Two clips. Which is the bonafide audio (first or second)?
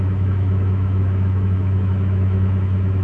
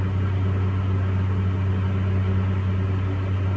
second